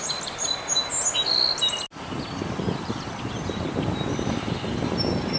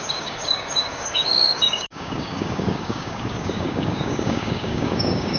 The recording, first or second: first